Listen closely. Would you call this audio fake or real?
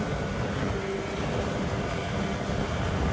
real